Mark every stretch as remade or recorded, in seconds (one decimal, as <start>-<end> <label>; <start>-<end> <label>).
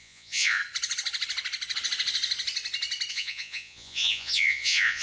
0.0-0.6 remade; 0.6-3.1 recorded; 3.1-5.0 remade